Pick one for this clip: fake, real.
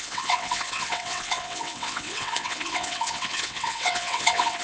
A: fake